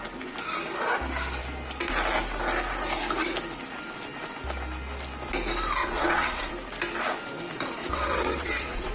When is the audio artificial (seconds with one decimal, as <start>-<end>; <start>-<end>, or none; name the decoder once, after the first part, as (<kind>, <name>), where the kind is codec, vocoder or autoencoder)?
5.8-6.5 (vocoder, WaveNeXt); 7.8-8.9